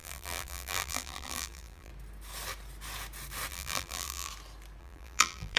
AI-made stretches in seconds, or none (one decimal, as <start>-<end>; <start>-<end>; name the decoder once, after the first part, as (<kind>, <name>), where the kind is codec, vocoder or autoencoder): 0.0-1.9 (vocoder, BigVGAN v2); 3.5-4.3; 4.8-5.6